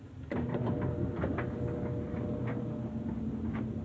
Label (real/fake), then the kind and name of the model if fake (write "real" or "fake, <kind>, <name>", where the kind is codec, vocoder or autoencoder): real